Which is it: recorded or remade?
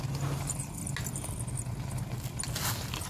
recorded